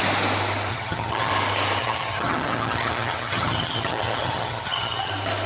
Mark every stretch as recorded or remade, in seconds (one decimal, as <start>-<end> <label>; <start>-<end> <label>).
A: 0.0-0.7 recorded; 0.7-1.3 remade; 1.3-1.8 recorded; 1.8-5.1 remade; 5.1-5.5 recorded